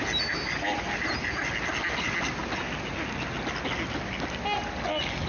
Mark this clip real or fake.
real